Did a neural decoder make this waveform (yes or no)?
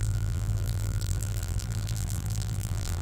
yes